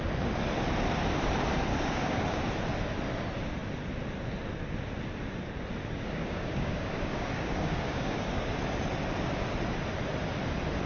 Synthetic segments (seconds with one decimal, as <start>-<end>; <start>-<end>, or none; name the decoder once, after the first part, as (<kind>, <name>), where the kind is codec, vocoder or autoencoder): 1.7-2.4 (codec, DAC); 5.8-8.6